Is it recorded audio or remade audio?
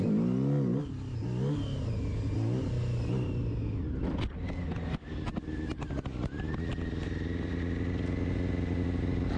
recorded